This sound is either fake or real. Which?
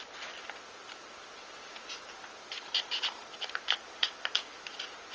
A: real